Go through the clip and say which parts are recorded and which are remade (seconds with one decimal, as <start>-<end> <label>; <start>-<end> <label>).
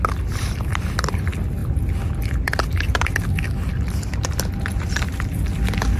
0.0-6.0 recorded